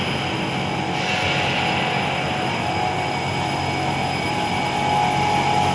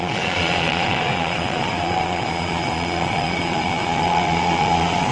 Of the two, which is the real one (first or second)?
first